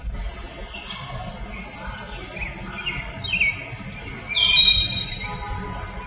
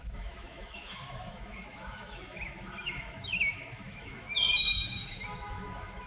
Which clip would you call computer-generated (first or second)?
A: second